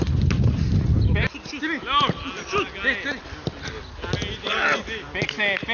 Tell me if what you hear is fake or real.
real